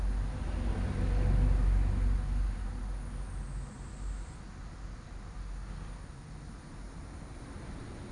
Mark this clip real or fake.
real